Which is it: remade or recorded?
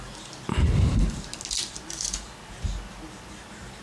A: recorded